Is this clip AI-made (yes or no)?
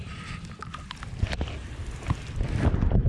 no